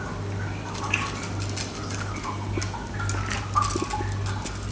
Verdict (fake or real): real